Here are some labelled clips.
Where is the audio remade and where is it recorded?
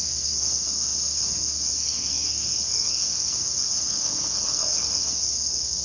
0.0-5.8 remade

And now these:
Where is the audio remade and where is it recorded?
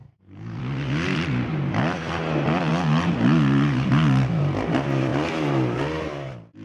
0.0-0.6 remade; 0.6-6.6 recorded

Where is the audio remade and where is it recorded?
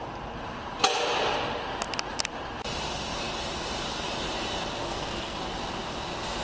0.0-4.8 recorded; 4.8-5.4 remade; 5.4-6.4 recorded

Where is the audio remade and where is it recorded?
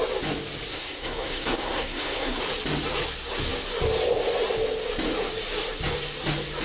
0.0-0.7 recorded; 0.7-2.4 remade; 2.4-6.6 recorded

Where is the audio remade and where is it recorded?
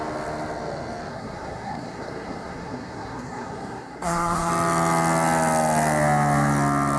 0.0-1.1 recorded; 1.1-4.5 remade; 4.5-7.0 recorded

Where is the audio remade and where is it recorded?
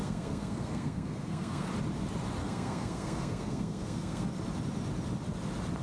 0.0-1.7 remade; 1.7-2.4 recorded; 2.4-4.3 remade; 4.3-5.8 recorded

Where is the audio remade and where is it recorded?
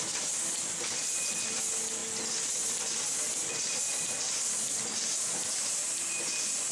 0.0-6.7 recorded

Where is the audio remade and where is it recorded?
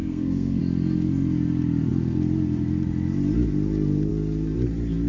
0.0-0.6 remade; 0.6-5.1 recorded